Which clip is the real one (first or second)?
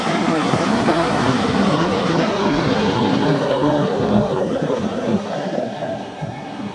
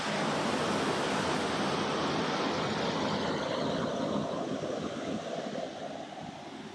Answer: second